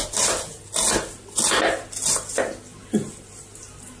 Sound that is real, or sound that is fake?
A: real